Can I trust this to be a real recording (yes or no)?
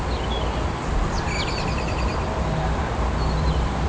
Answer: yes